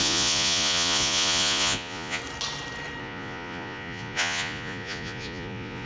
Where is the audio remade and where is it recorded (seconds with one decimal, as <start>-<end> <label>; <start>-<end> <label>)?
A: 0.0-2.2 remade; 2.2-3.0 recorded; 3.0-5.9 remade